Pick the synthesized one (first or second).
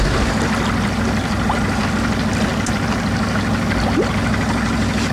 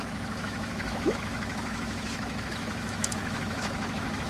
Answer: second